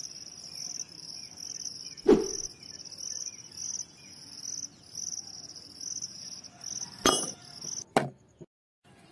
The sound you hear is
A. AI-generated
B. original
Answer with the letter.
B